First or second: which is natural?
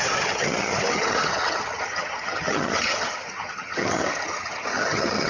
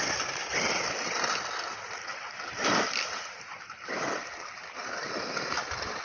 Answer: second